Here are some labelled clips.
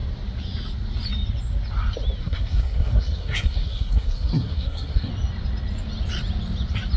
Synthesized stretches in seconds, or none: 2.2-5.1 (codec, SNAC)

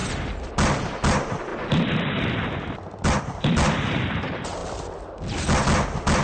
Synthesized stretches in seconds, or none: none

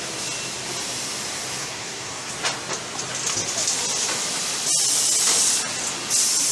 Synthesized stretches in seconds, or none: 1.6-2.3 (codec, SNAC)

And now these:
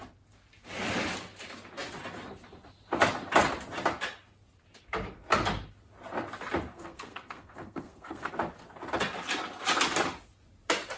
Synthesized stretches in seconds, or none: 6.7-8.3 (codec, SNAC)

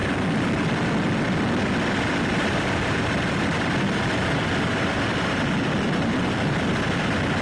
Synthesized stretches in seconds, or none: none

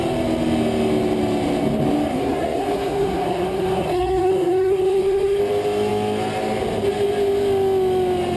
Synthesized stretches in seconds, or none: 2.1-5.4 (codec, SNAC)

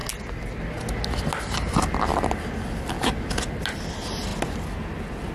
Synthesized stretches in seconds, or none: none

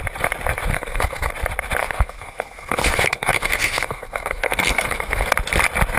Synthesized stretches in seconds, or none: 0.7-1.3 (codec, SNAC); 1.8-5.3